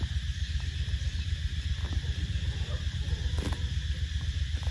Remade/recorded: recorded